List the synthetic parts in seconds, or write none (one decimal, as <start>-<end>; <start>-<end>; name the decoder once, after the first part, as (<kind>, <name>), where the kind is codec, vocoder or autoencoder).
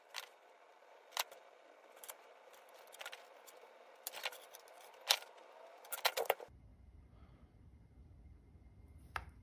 none